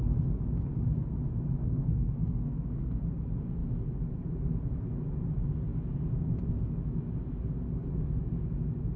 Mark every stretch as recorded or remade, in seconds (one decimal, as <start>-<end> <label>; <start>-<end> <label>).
0.0-1.6 recorded; 1.6-3.0 remade; 3.0-9.0 recorded